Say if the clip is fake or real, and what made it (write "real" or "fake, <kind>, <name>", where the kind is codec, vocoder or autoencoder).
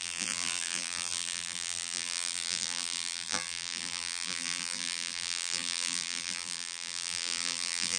fake, vocoder, BigVGAN v2